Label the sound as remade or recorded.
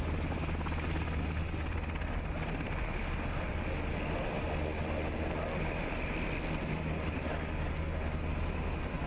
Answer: recorded